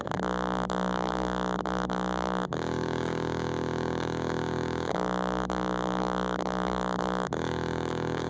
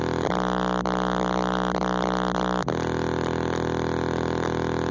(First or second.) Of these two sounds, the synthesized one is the first